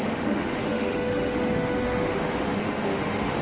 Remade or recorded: remade